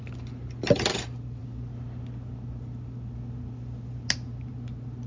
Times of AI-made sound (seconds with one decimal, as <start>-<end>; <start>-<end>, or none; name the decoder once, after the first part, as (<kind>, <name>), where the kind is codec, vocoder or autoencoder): none